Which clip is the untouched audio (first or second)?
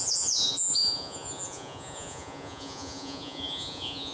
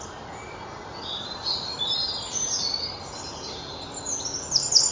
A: second